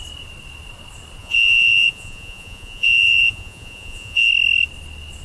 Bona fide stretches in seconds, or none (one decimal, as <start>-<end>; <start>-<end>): 0.0-1.2; 4.3-5.2